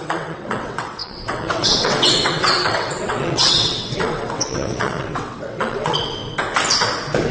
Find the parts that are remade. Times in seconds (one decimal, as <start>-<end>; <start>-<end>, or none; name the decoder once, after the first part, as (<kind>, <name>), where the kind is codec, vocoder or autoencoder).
0.0-6.2 (vocoder, WaveNeXt)